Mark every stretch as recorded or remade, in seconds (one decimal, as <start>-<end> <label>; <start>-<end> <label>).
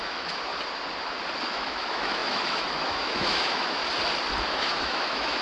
0.0-0.5 remade; 0.5-1.4 recorded; 1.4-3.8 remade; 3.8-4.5 recorded; 4.5-5.4 remade